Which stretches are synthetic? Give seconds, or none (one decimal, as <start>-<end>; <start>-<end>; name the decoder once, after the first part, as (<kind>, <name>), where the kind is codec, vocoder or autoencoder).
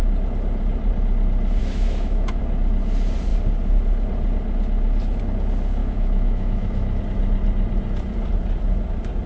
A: 1.6-2.4 (autoencoder, DAC-VAE); 5.8-7.0